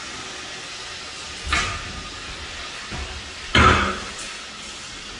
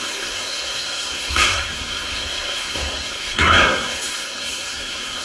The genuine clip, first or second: first